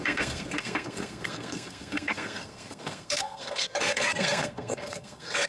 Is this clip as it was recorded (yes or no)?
no